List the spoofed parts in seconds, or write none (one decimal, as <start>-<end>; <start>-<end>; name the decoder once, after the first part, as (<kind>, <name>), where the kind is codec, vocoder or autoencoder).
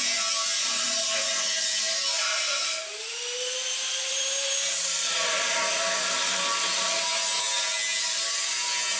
0.7-1.2 (vocoder, BigVGAN v2); 2.8-5.6